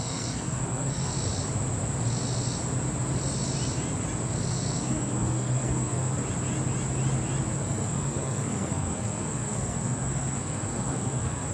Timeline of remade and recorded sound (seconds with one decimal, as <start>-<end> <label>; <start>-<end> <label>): 0.0-1.1 remade; 1.1-4.5 recorded; 4.5-6.2 remade; 6.2-7.5 recorded; 7.5-11.5 remade